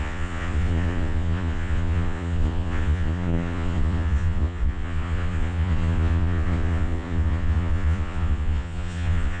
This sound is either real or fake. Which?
fake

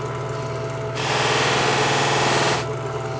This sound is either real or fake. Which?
real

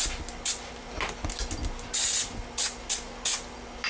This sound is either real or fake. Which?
real